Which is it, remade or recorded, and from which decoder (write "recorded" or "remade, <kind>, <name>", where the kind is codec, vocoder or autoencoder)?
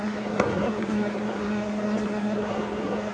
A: remade, codec, SNAC